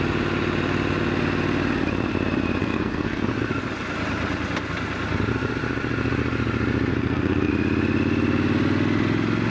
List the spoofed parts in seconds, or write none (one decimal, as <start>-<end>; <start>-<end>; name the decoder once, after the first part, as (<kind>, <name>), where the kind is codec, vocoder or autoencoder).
2.6-3.2 (codec, SNAC); 6.9-7.5